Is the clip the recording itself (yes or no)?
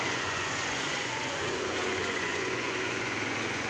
no